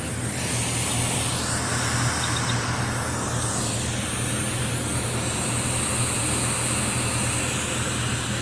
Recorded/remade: recorded